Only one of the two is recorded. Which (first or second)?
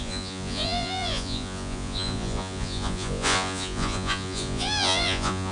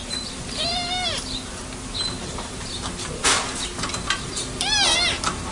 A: second